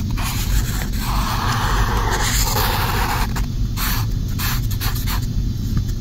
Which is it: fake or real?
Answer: real